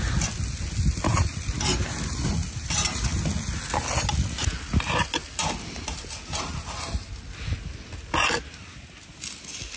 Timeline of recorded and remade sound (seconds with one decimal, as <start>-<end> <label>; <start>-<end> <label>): 0.0-9.8 recorded